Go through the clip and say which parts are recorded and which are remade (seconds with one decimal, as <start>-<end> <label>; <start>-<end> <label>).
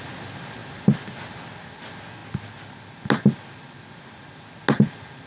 0.0-5.3 recorded